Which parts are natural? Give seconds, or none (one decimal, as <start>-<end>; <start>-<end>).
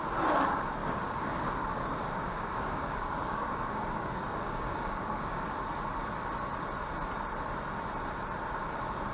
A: 0.0-0.8; 5.6-9.1